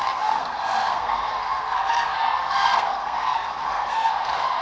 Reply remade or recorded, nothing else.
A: remade